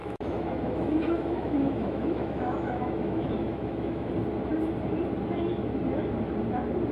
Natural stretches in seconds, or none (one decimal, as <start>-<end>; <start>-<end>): 4.1-6.9